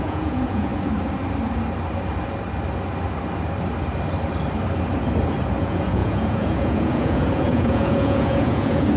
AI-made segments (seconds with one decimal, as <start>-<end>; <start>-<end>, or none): 0.0-0.7; 5.6-9.0